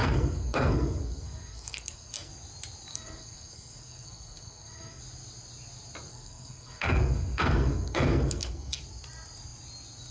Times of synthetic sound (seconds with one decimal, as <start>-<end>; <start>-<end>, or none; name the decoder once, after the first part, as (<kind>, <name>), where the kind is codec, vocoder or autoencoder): 0.0-2.3 (codec, SNAC); 2.9-5.0; 6.1-8.8

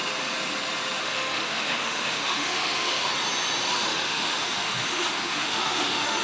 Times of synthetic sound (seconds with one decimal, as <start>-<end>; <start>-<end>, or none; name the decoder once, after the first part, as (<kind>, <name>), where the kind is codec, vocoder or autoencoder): 1.0-3.1 (autoencoder, DAC-VAE); 3.7-6.2

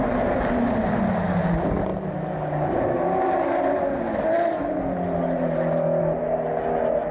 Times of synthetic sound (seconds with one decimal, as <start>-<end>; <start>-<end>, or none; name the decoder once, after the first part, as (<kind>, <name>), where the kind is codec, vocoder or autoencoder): none

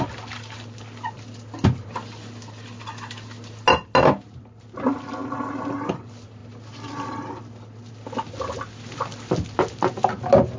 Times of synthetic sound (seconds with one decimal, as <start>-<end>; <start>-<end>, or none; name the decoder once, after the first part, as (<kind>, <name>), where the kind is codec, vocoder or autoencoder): none

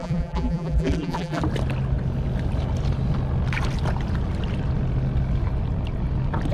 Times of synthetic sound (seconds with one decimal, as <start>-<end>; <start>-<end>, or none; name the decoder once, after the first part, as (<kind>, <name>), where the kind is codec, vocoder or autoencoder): 0.0-1.4 (vocoder, BigVGAN v2)

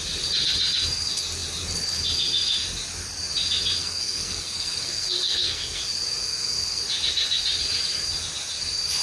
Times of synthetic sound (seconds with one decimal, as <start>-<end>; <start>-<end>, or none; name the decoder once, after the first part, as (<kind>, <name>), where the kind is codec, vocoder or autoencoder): 3.8-5.8 (codec, SNAC); 6.2-6.8

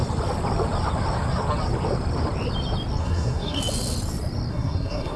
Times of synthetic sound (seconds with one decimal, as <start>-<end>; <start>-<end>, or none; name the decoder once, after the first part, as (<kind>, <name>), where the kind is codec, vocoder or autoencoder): 3.0-3.6 (codec, SNAC); 4.5-5.2

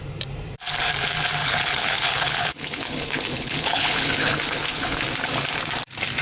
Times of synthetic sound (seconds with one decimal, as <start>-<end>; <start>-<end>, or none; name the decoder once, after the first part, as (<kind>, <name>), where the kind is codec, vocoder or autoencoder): 1.4-5.1 (codec, HILCodec)